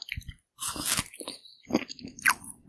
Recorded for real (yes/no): yes